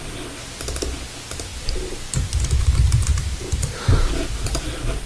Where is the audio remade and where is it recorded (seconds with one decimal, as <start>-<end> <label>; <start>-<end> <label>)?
0.0-5.1 recorded